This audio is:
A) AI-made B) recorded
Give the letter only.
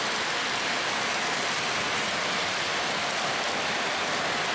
B